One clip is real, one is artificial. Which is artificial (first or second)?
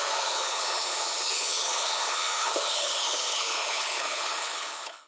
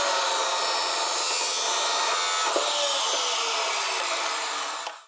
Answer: first